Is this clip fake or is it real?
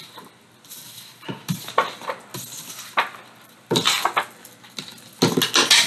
real